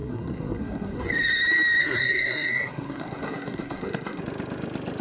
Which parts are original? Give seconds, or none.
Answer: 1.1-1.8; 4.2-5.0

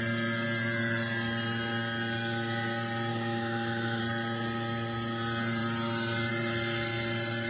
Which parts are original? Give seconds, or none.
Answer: 0.0-3.1; 4.0-7.5

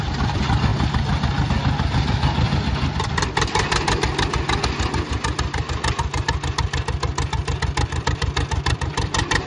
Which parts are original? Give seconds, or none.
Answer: 0.0-9.5

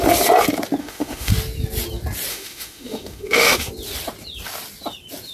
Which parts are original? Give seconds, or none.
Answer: 0.0-0.8; 1.3-2.3; 3.7-5.3